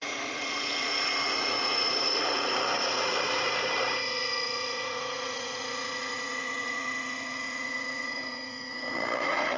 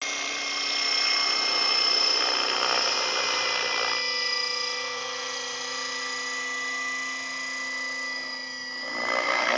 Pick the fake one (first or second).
first